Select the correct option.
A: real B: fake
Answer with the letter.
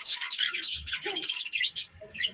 B